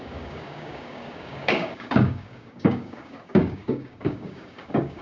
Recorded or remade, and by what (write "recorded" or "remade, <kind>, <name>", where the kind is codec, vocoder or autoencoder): remade, codec, DAC